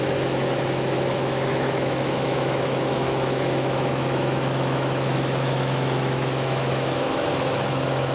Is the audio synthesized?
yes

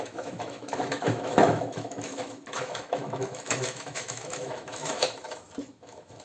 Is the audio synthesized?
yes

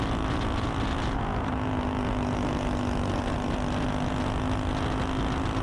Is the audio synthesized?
no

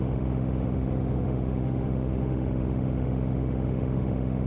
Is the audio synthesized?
yes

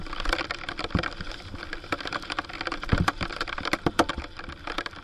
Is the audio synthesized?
no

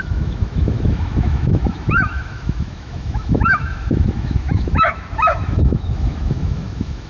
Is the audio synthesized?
yes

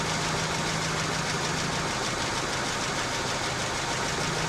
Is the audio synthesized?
no